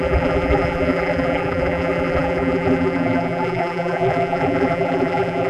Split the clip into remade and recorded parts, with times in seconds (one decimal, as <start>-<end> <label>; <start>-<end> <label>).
0.0-5.5 remade